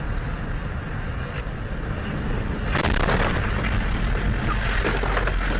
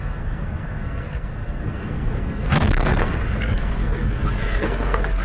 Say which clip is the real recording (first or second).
first